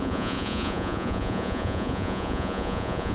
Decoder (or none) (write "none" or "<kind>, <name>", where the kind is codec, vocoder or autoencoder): vocoder, Vocos